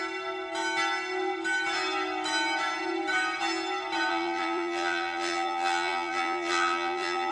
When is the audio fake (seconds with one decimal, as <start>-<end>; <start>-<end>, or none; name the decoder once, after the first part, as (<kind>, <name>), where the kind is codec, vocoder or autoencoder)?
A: 4.1-7.3 (vocoder, BigVGAN v2)